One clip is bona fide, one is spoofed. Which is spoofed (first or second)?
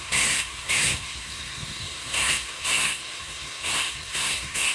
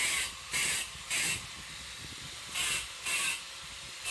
first